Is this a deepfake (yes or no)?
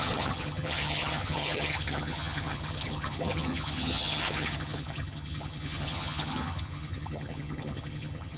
yes